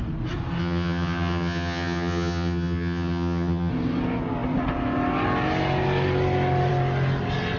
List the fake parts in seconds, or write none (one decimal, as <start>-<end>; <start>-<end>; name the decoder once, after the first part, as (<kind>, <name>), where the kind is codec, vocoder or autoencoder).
0.6-3.7 (vocoder, HiFi-GAN)